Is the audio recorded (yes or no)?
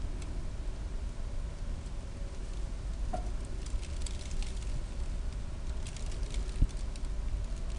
yes